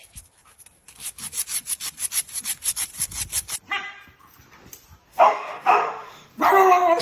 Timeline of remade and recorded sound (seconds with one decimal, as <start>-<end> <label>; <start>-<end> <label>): 0.0-5.1 recorded; 5.1-6.3 remade; 6.3-7.0 recorded